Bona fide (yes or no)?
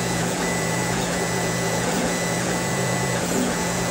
no